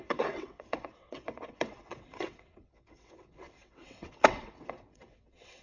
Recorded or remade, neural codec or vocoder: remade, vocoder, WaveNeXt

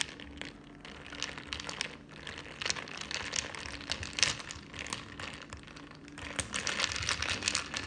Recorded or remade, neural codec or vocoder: recorded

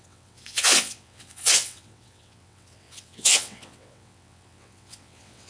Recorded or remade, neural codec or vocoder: remade, vocoder, WaveNeXt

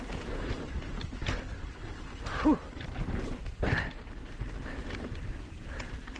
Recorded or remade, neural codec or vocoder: recorded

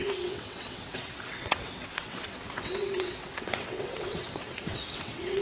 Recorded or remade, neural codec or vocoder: remade, vocoder, WaveNeXt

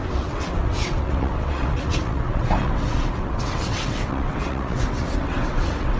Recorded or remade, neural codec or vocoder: remade, vocoder, WaveNeXt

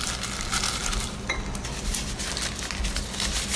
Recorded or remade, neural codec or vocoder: recorded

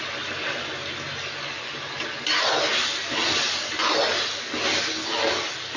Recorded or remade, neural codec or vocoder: recorded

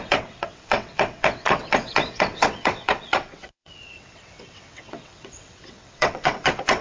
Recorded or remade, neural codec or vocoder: remade, vocoder, WaveNeXt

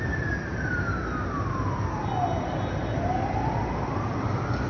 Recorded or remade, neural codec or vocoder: recorded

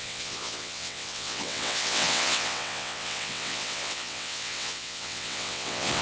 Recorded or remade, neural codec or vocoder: remade, vocoder, WaveNeXt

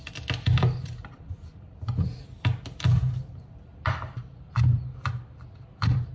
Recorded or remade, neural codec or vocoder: recorded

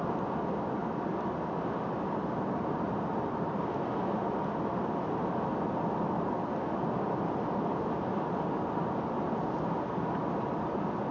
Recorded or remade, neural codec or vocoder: recorded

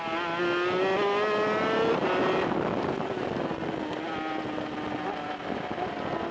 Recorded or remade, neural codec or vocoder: recorded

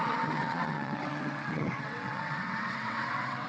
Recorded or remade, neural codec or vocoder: remade, vocoder, WaveNeXt